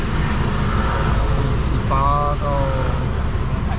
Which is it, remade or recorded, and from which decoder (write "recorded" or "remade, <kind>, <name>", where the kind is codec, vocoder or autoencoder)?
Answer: recorded